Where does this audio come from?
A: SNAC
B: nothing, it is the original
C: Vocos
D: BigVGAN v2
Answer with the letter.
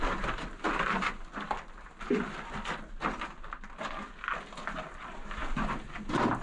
B